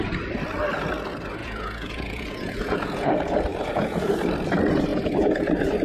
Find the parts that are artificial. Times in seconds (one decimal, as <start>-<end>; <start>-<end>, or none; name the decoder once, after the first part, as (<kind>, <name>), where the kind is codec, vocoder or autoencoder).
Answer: 1.4-3.1 (vocoder, Vocos); 3.5-4.1